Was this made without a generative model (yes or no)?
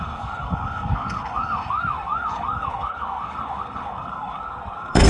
no